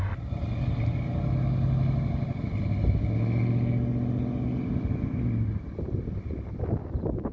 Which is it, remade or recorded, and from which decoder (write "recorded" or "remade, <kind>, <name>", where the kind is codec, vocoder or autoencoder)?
recorded